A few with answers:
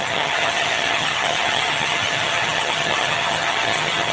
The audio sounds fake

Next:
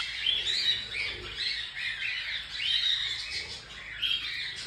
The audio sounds real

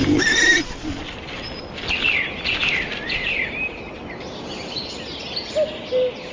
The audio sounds real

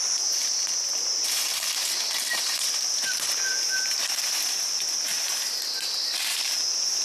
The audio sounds real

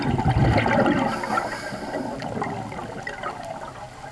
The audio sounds real